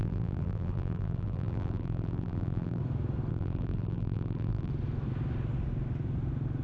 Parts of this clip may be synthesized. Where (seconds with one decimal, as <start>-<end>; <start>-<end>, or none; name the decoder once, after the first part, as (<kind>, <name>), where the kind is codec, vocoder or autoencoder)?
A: 0.0-2.8 (vocoder, BigVGAN v2); 3.3-4.7